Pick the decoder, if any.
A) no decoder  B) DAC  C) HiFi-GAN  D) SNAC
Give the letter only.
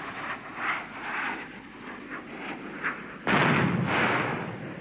A